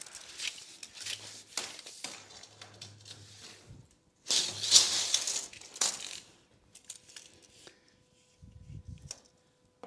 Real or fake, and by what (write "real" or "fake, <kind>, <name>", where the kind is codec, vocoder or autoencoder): real